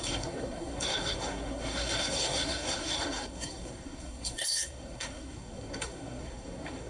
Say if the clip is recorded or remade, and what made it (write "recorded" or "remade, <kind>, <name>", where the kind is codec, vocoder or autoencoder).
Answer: remade, codec, SNAC